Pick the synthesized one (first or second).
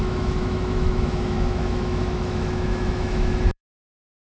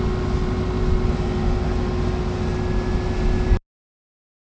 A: first